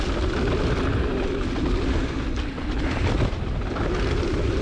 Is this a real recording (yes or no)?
yes